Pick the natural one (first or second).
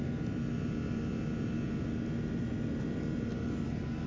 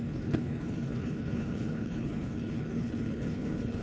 first